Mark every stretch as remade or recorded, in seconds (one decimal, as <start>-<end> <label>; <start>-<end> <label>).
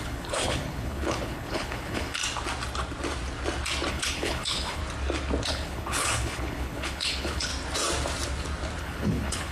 0.0-2.2 remade; 2.2-3.9 recorded; 3.9-4.8 remade; 4.8-5.5 recorded; 5.5-7.5 remade; 7.5-8.8 recorded; 8.8-9.5 remade